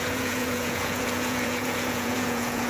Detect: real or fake fake